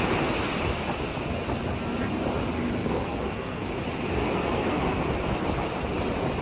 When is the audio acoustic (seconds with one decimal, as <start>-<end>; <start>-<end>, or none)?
0.0-2.8; 3.7-4.2; 5.0-6.4